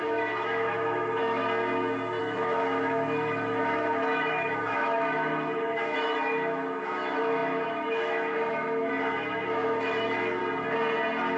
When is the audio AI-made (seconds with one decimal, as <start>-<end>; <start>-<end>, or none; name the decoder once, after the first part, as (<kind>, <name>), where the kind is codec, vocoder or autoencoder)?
0.0-1.4 (autoencoder, DAC-VAE); 2.2-10.4